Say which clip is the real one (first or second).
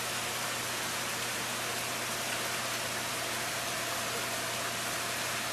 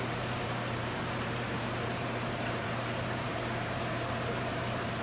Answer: first